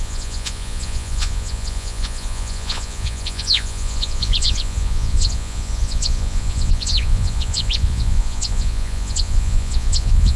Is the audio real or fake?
fake